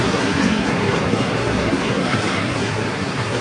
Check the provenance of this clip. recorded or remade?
remade